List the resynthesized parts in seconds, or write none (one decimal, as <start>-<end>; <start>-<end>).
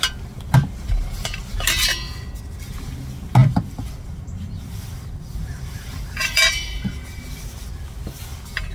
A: 3.4-7.2